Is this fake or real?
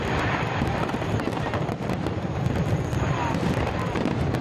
fake